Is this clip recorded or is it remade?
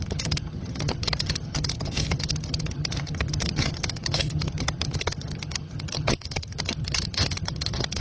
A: remade